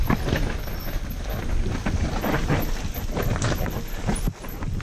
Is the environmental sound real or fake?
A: real